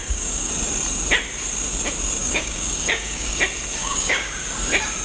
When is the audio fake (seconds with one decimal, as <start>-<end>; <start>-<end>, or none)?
0.0-0.5; 2.2-3.4; 3.8-4.4